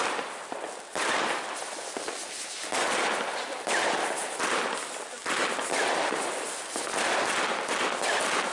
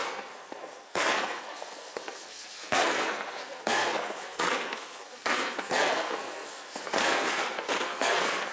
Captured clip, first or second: first